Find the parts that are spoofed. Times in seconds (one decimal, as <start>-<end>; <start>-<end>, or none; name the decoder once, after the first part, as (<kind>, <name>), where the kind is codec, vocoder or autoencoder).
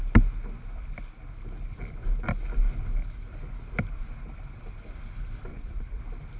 5.5-6.0 (vocoder, Vocos)